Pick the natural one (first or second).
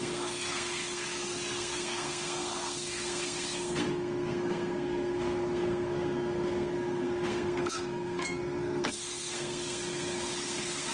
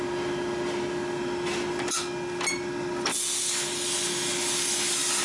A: second